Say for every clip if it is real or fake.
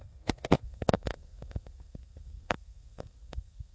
fake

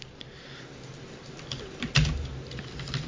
real